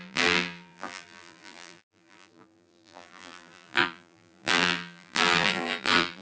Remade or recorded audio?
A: remade